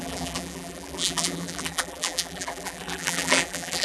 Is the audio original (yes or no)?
no